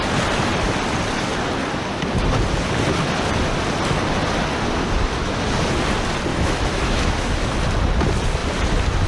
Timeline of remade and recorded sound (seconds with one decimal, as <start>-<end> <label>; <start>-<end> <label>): 0.0-6.3 recorded; 6.3-7.3 remade; 7.3-9.1 recorded